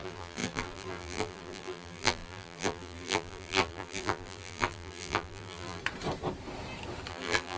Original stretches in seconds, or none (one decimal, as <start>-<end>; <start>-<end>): 5.8-7.1